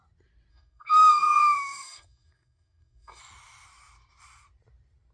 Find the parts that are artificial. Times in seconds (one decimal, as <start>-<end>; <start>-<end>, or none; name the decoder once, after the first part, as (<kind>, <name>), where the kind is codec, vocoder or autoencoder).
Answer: 0.5-3.2 (codec, DAC)

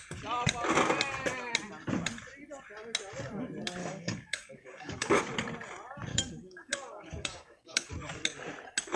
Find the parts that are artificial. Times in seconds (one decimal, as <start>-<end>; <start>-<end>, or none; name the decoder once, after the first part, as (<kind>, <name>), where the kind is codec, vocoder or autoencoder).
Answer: 3.8-5.2 (codec, DAC); 6.1-7.9

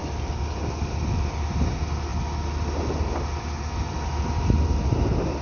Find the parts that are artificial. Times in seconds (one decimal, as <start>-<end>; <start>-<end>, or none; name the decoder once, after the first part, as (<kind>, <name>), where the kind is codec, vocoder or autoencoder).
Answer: none

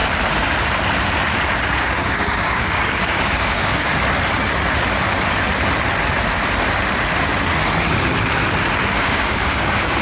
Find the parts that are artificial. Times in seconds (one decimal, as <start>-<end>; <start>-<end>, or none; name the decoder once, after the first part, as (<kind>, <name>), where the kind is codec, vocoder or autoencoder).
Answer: 1.6-3.9 (codec, DAC); 9.0-10.0

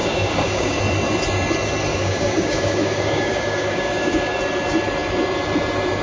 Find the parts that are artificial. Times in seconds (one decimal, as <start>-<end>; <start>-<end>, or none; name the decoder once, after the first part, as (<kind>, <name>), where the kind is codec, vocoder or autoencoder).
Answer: 0.0-0.8 (codec, DAC); 1.9-4.4